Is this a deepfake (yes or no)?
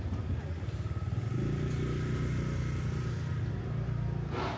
no